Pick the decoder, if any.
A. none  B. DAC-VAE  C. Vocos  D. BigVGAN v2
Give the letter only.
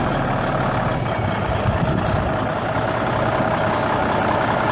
A